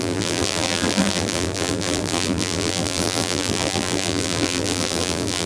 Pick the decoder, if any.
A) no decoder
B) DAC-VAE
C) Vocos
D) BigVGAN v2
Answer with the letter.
D